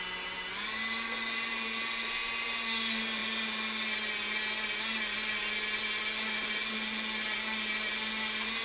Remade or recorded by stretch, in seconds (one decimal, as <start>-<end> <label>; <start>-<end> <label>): 0.0-8.6 recorded